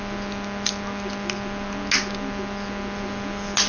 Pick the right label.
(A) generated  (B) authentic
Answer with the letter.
B